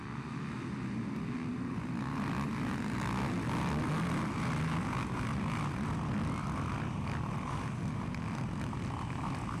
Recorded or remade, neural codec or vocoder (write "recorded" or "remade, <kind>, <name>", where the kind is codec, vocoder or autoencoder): recorded